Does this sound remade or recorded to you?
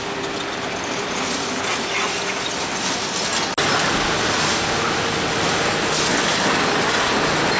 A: recorded